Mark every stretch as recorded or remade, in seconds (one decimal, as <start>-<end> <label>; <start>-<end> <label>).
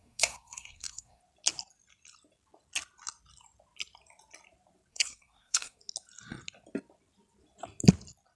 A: 0.0-1.2 remade; 1.2-4.9 recorded; 4.9-5.8 remade; 5.8-8.4 recorded